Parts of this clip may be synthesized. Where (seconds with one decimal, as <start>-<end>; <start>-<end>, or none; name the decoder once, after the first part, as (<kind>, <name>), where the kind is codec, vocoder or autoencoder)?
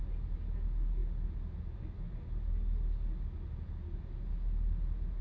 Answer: none